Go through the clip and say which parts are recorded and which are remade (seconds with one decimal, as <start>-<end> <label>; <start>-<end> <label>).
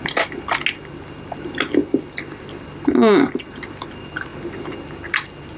0.0-5.6 recorded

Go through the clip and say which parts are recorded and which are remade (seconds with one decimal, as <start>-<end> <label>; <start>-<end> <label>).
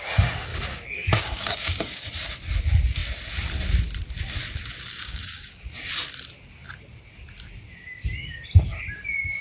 0.0-0.5 recorded; 0.5-2.1 remade; 2.1-4.9 recorded; 4.9-5.5 remade; 5.5-9.4 recorded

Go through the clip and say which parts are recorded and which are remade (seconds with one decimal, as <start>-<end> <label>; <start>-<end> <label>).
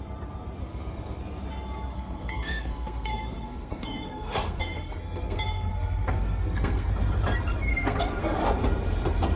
0.0-0.6 recorded; 0.6-1.2 remade; 1.2-1.9 recorded; 1.9-6.9 remade; 6.9-7.7 recorded; 7.7-8.2 remade; 8.2-9.4 recorded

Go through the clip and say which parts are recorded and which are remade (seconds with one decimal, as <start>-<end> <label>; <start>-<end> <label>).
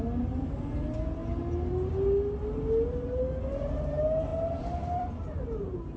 0.0-4.3 recorded; 4.3-5.4 remade; 5.4-6.0 recorded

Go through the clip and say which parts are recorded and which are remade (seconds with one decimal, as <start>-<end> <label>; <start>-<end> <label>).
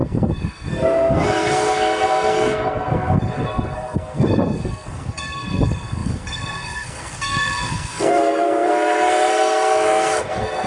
0.0-10.7 remade